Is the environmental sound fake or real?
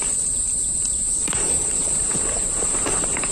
fake